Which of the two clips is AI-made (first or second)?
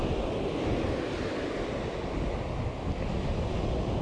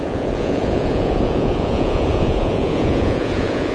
second